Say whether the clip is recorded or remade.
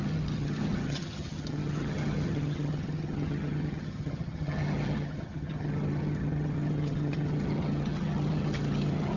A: remade